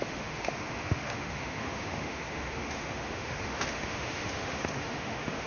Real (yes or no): no